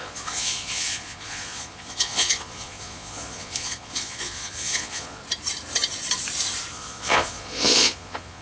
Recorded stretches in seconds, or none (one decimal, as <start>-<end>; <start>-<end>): 5.2-6.7